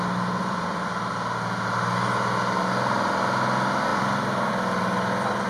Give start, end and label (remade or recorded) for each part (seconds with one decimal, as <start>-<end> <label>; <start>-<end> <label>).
0.0-0.4 recorded; 0.4-1.1 remade; 1.1-3.9 recorded; 3.9-4.5 remade; 4.5-5.5 recorded